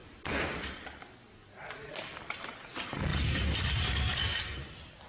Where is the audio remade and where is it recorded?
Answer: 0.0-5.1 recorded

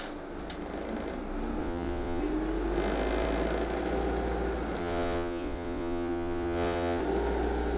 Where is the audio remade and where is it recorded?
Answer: 0.0-1.6 recorded; 1.6-2.2 remade; 2.2-4.8 recorded; 4.8-7.0 remade; 7.0-7.8 recorded

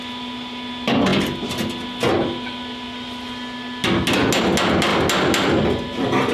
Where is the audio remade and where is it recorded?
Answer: 0.0-6.3 recorded